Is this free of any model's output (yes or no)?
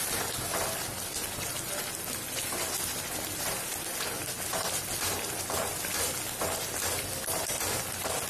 yes